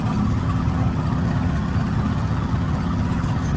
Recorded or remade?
remade